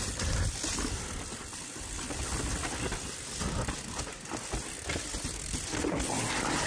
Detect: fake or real real